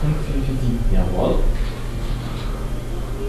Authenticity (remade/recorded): recorded